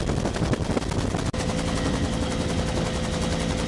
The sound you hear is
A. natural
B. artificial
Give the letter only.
A